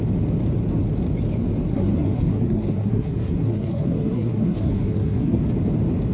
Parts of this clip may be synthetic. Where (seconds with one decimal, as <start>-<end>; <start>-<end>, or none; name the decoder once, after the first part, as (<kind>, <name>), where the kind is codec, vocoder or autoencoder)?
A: 1.7-5.4 (codec, SNAC)